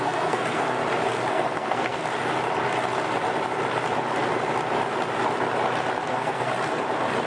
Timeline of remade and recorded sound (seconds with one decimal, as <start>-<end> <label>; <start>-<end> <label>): 0.0-0.8 remade; 0.8-1.3 recorded; 1.3-2.0 remade; 2.0-6.1 recorded; 6.1-6.5 remade; 6.5-7.3 recorded